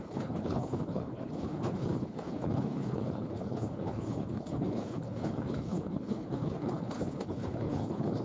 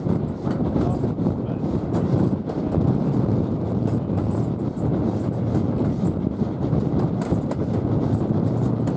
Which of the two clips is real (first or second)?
second